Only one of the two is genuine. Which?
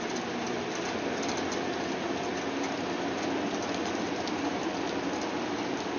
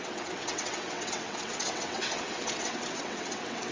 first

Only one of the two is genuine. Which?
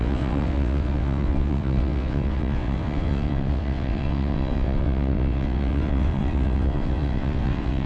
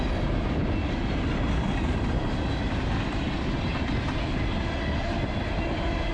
second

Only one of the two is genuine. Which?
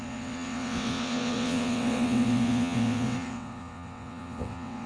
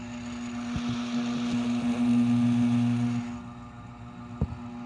second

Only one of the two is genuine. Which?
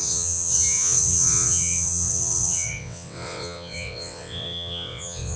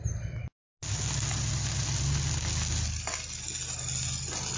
second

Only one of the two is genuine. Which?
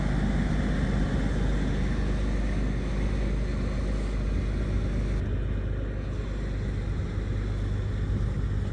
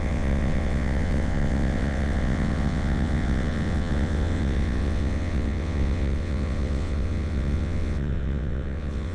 first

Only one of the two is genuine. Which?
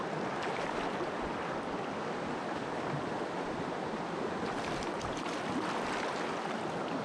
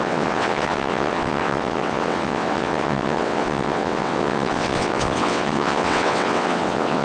first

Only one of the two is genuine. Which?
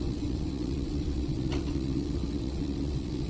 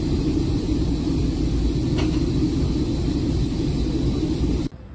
second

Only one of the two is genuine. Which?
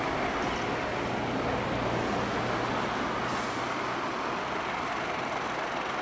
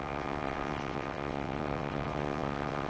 first